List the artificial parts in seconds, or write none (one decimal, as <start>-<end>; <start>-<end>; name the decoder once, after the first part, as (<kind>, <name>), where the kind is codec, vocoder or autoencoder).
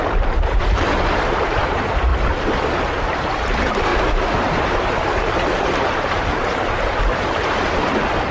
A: 0.0-2.1 (vocoder, BigVGAN v2); 3.1-7.8